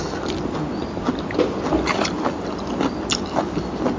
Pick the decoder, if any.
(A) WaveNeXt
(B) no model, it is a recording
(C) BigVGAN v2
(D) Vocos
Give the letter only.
B